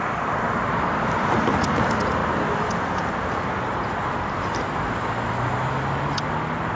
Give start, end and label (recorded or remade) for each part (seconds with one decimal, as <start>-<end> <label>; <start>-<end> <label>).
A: 0.0-6.8 recorded